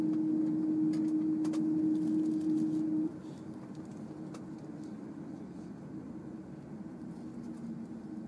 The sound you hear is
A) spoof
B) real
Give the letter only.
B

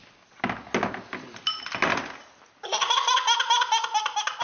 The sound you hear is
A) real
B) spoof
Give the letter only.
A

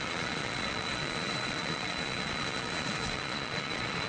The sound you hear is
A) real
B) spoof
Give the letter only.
B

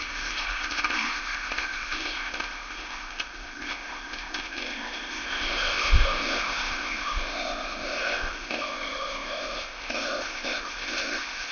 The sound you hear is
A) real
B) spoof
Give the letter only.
B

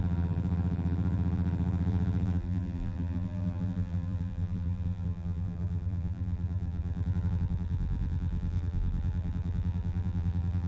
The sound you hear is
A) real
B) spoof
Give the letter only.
B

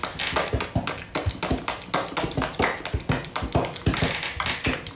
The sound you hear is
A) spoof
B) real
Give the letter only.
B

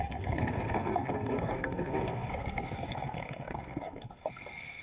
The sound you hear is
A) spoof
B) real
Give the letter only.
A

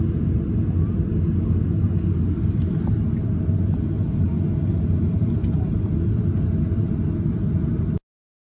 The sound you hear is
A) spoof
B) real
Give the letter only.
B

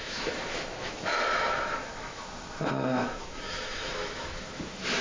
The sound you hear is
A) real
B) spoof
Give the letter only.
B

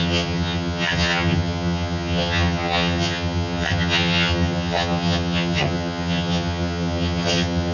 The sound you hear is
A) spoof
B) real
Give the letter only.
A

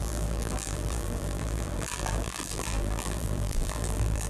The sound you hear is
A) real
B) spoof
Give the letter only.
B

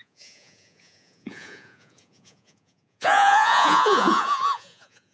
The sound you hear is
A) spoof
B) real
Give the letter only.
A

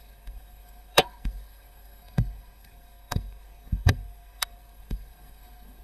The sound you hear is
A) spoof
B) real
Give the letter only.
A